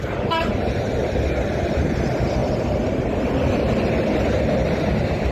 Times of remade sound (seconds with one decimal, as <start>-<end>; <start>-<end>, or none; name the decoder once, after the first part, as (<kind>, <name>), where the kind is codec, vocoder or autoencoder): 0.0-5.3 (vocoder, BigVGAN v2)